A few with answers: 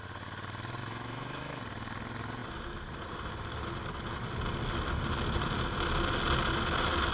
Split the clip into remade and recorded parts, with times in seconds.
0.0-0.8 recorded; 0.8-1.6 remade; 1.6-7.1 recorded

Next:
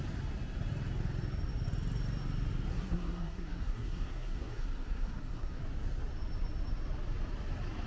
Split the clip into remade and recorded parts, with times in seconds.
0.0-2.7 recorded; 2.7-5.6 remade; 5.6-7.9 recorded

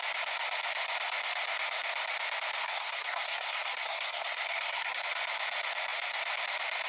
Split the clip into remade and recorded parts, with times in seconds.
0.0-2.6 recorded; 2.6-5.0 remade; 5.0-6.9 recorded

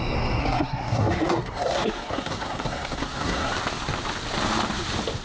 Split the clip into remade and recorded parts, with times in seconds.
0.0-0.4 recorded; 0.4-3.5 remade; 3.5-5.2 recorded

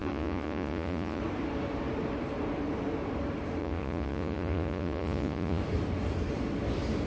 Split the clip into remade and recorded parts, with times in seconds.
0.0-1.2 remade; 1.2-3.6 recorded; 3.6-5.6 remade; 5.6-7.1 recorded

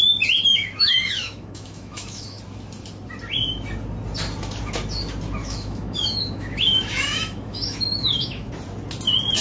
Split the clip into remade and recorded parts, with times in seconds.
0.0-0.5 recorded; 0.5-2.4 remade; 2.4-5.4 recorded; 5.4-8.5 remade; 8.5-9.4 recorded

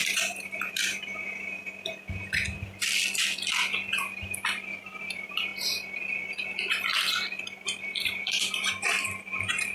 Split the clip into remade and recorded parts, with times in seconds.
0.0-1.6 remade; 1.6-4.8 recorded; 4.8-5.5 remade; 5.5-7.8 recorded; 7.8-9.7 remade